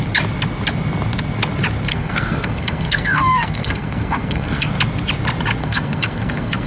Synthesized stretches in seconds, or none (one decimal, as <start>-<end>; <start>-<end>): 1.9-4.7; 5.6-6.7